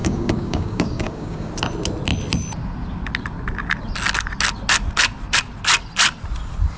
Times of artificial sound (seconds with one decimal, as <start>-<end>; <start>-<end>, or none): 0.0-1.5